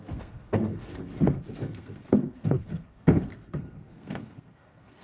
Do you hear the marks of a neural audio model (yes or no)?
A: yes